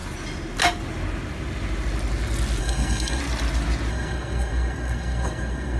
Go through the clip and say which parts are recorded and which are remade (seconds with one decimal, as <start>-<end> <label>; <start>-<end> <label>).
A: 0.0-2.6 recorded; 2.6-3.2 remade; 3.2-3.9 recorded; 3.9-5.8 remade